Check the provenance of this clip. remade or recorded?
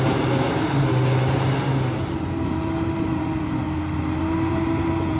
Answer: remade